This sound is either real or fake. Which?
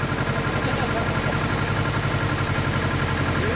real